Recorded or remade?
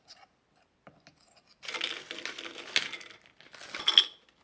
recorded